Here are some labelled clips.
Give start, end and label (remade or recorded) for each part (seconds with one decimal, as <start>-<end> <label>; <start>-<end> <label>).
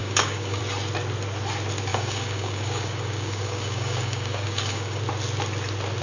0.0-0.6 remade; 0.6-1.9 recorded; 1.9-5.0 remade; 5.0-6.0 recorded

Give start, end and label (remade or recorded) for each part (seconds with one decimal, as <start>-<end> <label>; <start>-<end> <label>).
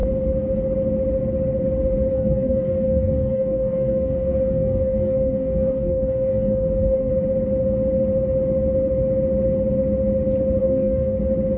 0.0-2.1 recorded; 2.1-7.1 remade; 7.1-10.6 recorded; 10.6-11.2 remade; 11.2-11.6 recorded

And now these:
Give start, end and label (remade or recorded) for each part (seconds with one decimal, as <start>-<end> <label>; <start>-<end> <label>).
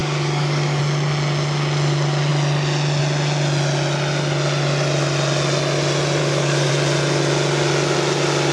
0.0-0.8 remade; 0.8-6.2 recorded; 6.2-6.7 remade; 6.7-8.5 recorded